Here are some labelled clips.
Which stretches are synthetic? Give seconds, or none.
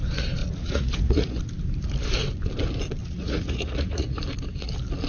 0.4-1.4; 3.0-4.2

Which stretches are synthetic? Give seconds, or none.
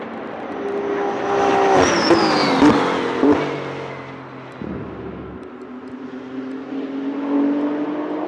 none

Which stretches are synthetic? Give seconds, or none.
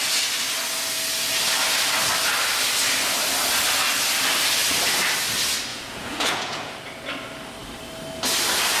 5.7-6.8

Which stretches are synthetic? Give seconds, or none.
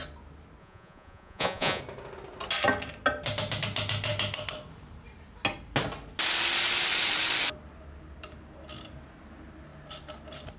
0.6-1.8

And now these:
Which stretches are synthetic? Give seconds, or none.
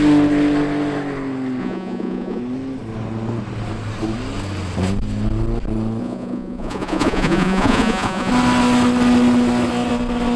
1.6-2.4; 6.0-8.3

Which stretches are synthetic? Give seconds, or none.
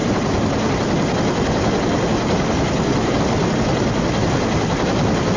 none